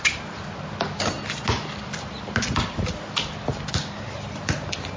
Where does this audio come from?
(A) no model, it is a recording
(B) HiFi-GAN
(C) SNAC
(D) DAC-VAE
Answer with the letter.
A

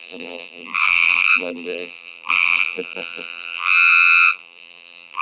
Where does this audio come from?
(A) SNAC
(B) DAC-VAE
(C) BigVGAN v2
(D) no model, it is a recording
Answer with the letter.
C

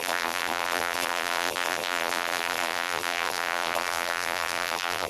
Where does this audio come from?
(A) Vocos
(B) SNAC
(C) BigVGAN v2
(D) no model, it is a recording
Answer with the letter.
C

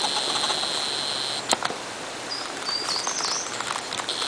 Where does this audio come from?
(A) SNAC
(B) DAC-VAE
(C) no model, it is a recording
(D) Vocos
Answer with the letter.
C